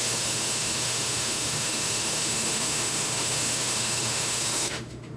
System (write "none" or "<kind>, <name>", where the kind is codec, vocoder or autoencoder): autoencoder, DAC-VAE